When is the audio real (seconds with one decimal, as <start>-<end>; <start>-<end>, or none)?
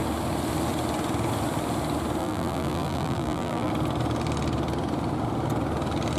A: 0.0-2.2; 3.7-6.2